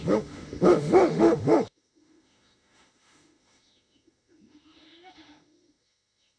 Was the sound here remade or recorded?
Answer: remade